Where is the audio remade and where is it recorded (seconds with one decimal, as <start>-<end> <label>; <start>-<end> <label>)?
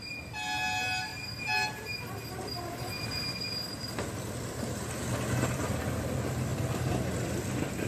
0.0-1.1 recorded; 1.1-5.8 remade; 5.8-6.5 recorded; 6.5-7.4 remade; 7.4-7.9 recorded